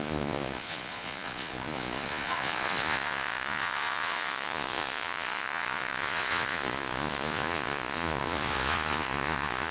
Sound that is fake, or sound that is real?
fake